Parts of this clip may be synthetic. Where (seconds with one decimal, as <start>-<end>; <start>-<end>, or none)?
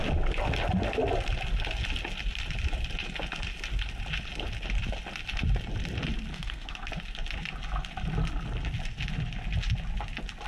6.3-6.9